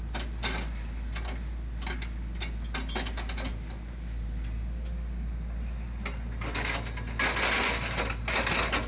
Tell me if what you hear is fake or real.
real